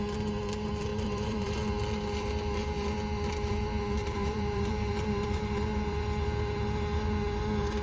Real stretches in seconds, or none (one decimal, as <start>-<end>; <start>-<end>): 0.0-0.9; 1.6-4.0; 5.9-7.8